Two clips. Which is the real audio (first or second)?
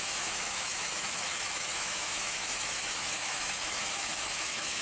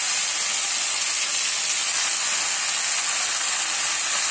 second